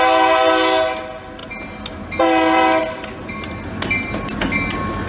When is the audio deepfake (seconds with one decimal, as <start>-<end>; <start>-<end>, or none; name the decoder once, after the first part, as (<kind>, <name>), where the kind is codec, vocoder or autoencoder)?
none